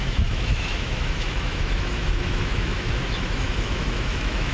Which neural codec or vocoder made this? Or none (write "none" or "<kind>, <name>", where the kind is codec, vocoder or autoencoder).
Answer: autoencoder, DAC-VAE